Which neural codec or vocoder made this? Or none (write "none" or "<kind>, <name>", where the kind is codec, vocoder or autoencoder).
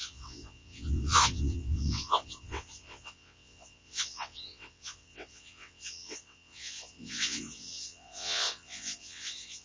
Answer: vocoder, WaveNeXt